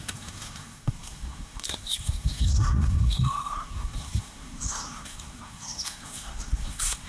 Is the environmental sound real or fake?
fake